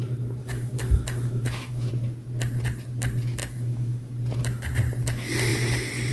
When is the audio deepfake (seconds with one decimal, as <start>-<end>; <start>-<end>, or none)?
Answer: 0.4-1.9; 3.4-4.1